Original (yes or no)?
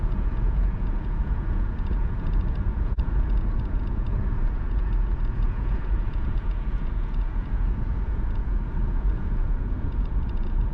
no